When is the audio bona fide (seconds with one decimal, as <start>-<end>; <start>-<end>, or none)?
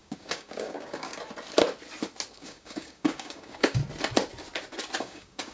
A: 1.1-2.3; 3.8-5.0